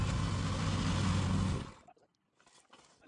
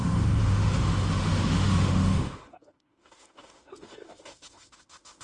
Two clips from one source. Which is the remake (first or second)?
second